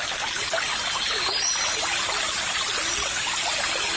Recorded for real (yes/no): yes